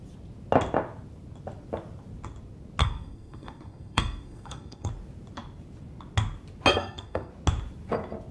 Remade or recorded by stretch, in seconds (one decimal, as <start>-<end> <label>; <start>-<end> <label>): 0.0-2.8 recorded; 2.8-4.9 remade; 4.9-6.7 recorded; 6.7-7.3 remade; 7.3-8.3 recorded